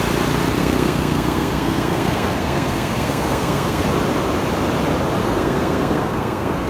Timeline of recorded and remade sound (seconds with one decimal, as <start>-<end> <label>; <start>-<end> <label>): 0.0-0.6 recorded; 0.6-3.9 remade; 3.9-5.2 recorded; 5.2-6.7 remade